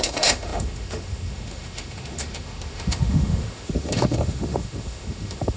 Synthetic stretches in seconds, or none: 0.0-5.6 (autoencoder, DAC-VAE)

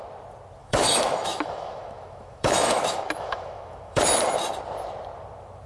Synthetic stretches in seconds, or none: 0.6-4.0 (autoencoder, DAC-VAE)

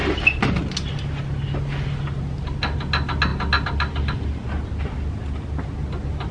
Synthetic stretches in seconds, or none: none

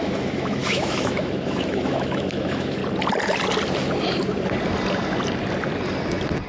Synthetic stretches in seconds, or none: 0.0-2.8 (autoencoder, DAC-VAE)

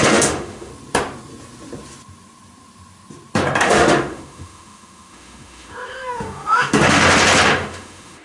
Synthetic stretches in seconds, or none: 0.0-0.7 (autoencoder, DAC-VAE); 3.6-7.0; 7.5-8.2

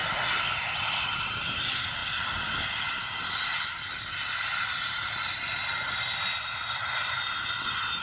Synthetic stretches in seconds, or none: none

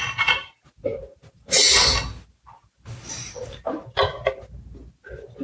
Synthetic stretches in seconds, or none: none

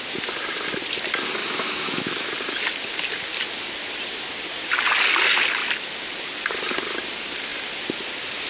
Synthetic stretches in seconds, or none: 1.4-2.3 (autoencoder, DAC-VAE)